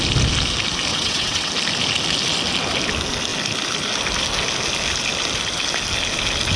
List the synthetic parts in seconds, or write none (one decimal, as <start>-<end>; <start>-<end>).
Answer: 0.9-1.5